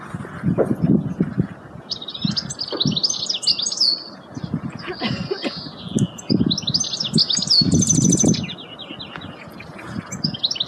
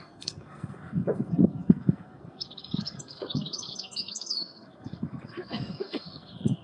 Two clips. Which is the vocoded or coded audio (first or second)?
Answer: second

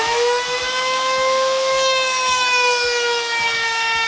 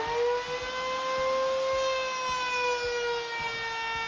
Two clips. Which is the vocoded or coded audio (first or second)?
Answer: first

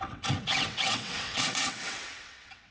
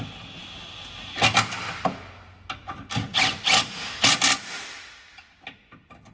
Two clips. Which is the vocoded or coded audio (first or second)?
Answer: first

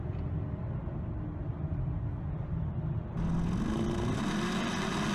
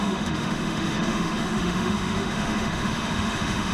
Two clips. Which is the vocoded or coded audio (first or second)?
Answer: second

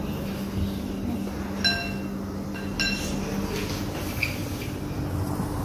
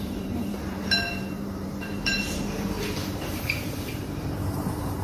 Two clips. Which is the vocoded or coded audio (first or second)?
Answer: second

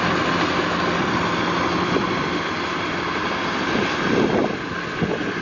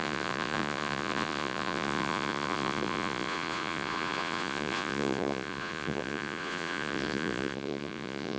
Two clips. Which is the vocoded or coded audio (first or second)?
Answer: second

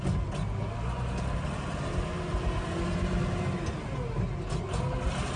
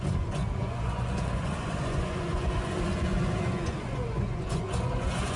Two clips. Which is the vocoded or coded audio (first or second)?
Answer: second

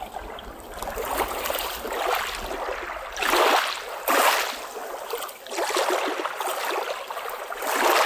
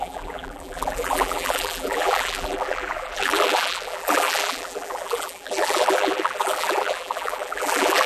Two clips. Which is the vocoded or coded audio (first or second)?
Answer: second